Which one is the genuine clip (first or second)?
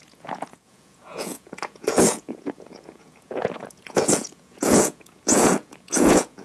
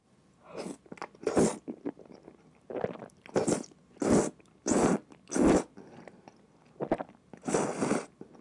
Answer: second